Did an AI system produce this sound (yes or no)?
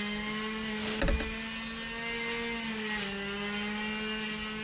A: no